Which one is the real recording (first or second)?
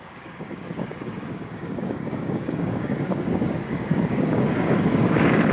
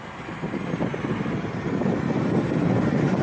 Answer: second